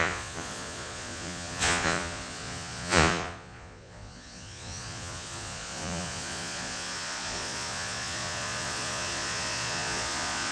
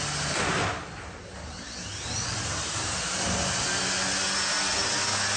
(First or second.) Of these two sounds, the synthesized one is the first